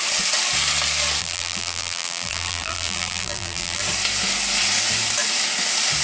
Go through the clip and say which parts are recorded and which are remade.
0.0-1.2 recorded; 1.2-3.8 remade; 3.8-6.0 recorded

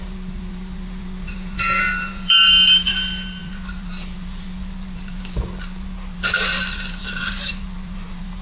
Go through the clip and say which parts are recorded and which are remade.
0.0-8.4 remade

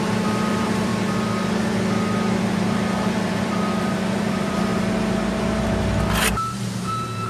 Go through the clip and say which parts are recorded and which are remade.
0.0-0.9 remade; 0.9-2.4 recorded; 2.4-4.7 remade; 4.7-6.3 recorded; 6.3-7.3 remade

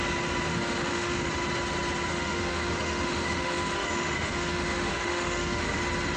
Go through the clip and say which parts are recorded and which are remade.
0.0-0.5 recorded; 0.5-1.3 remade; 1.3-2.1 recorded; 2.1-5.8 remade; 5.8-6.2 recorded

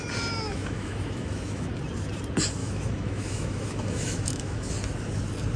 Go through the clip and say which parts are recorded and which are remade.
0.0-0.5 recorded; 0.5-1.7 remade; 1.7-2.6 recorded; 2.6-4.7 remade; 4.7-5.6 recorded

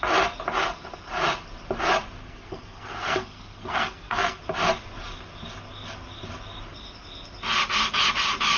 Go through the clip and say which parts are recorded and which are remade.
0.0-2.2 recorded; 2.2-4.4 remade; 4.4-8.6 recorded

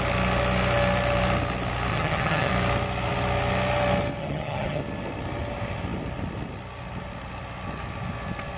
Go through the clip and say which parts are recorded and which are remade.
0.0-1.9 recorded; 1.9-2.5 remade; 2.5-4.2 recorded; 4.2-4.8 remade; 4.8-8.6 recorded